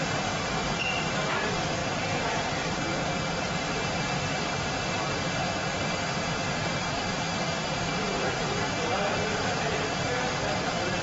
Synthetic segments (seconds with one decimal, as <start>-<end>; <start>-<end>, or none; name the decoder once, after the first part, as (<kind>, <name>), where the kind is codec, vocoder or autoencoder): none